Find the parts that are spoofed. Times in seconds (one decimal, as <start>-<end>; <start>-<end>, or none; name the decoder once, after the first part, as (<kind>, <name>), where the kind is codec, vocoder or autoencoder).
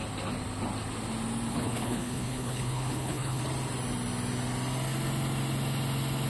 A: 1.5-3.4 (codec, HILCodec)